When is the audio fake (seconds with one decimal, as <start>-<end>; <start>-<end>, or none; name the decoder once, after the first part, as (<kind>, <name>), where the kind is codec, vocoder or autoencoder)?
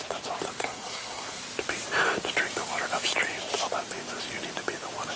0.6-1.4 (codec, SNAC)